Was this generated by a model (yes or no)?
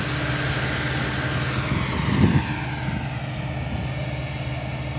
no